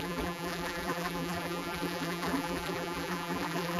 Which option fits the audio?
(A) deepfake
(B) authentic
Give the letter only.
A